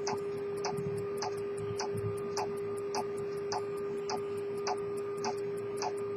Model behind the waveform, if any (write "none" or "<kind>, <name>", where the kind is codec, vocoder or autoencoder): none